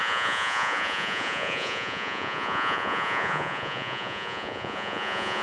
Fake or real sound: fake